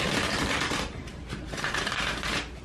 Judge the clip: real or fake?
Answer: fake